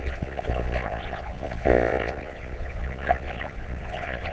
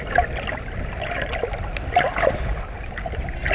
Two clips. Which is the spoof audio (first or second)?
first